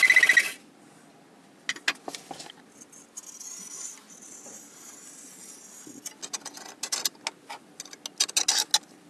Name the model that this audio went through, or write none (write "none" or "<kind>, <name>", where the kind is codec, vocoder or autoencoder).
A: none